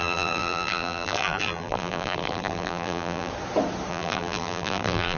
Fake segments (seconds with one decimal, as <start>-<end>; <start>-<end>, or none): 0.0-3.3; 3.9-5.2